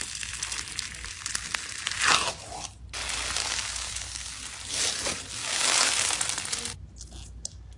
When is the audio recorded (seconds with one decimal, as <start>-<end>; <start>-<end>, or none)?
0.0-3.4; 4.3-5.4; 5.9-7.8